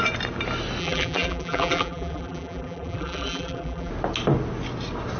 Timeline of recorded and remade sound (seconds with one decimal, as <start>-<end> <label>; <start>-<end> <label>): 0.0-0.8 recorded; 0.8-3.9 remade; 3.9-5.2 recorded